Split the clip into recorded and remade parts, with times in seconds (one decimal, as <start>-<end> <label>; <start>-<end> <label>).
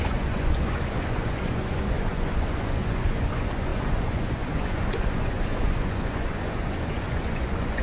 0.0-7.8 remade